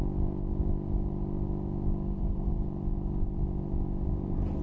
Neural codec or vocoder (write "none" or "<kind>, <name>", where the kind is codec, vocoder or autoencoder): none